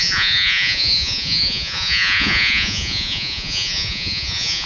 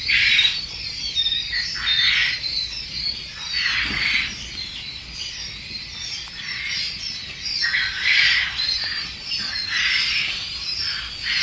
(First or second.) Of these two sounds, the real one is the second